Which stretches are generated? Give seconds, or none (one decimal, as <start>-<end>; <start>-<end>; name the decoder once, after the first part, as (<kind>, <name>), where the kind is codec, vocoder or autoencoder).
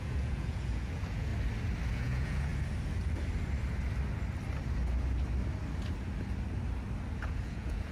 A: 0.0-1.3 (vocoder, Vocos); 1.9-2.5; 7.2-7.9